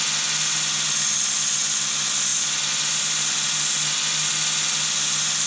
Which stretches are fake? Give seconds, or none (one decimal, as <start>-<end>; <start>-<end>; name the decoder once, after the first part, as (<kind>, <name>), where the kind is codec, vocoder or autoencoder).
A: none